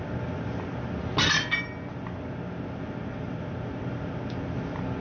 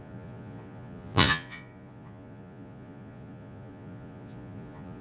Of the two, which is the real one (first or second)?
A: first